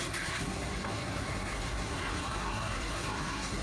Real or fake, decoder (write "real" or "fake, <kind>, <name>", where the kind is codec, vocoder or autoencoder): fake, codec, SNAC